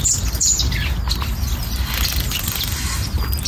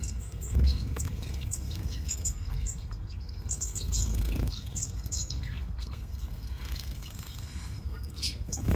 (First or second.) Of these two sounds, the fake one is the second